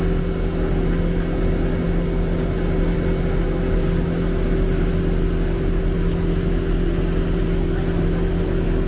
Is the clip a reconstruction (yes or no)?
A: no